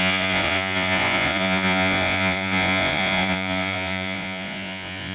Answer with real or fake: fake